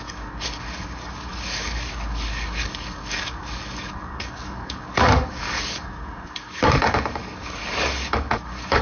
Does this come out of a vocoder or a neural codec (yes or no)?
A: yes